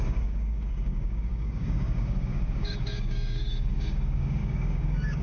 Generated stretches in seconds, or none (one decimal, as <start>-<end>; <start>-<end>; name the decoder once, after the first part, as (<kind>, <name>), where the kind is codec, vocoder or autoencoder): 0.0-5.2 (codec, DAC)